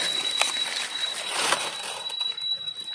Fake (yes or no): no